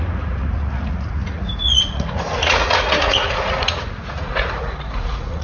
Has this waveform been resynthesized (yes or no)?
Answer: yes